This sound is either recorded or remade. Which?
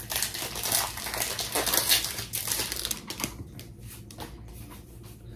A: recorded